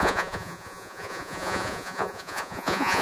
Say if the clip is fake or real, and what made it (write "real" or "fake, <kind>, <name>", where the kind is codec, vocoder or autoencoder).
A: fake, vocoder, Vocos